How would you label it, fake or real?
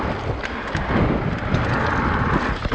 real